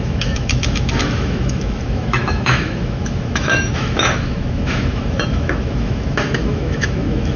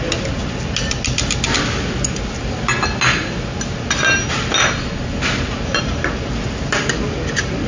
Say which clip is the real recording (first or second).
second